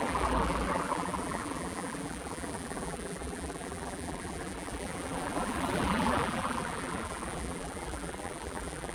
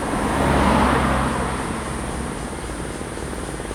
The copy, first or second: first